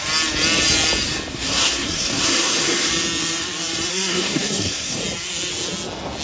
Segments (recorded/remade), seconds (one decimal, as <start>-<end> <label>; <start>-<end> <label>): 0.0-1.3 recorded; 1.3-2.9 remade; 2.9-3.9 recorded; 3.9-5.0 remade; 5.0-6.2 recorded